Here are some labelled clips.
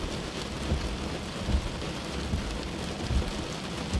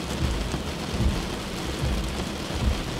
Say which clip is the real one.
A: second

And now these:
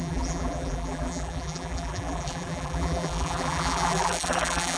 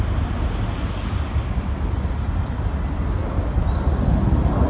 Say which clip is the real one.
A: second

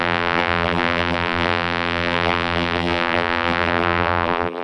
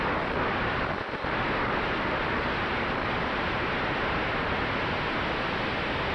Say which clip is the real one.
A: second